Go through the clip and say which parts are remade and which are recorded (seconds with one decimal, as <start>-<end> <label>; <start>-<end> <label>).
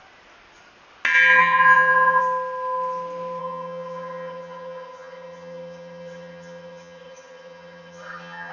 0.0-1.4 recorded; 1.4-2.2 remade; 2.2-3.4 recorded; 3.4-8.5 remade